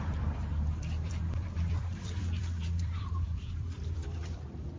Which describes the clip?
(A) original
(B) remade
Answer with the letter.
B